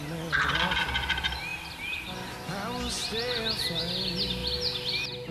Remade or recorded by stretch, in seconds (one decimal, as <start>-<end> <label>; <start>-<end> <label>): 0.0-5.3 recorded